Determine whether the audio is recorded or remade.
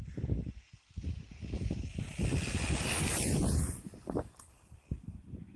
recorded